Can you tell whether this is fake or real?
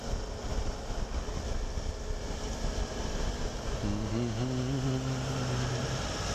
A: real